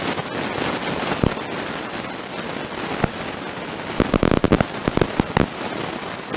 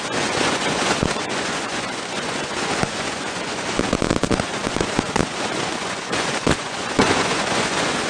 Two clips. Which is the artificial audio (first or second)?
second